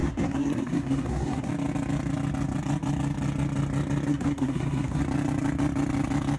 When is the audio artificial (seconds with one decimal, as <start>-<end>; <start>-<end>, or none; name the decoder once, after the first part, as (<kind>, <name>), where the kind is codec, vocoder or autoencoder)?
0.0-1.5 (codec, SNAC); 4.1-5.0